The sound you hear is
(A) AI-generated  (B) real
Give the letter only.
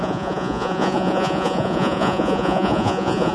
A